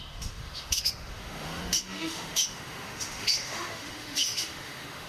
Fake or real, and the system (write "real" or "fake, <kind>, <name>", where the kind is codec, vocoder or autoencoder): fake, autoencoder, DAC-VAE